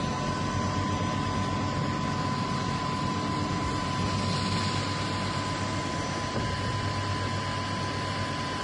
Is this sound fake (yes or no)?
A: no